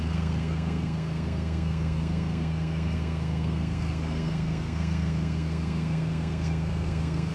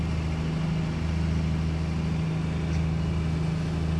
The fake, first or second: first